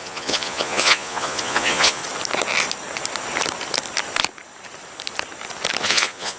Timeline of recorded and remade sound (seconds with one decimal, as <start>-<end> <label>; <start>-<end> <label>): 0.0-2.0 remade; 2.0-5.8 recorded; 5.8-6.4 remade